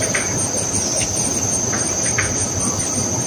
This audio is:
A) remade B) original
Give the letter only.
B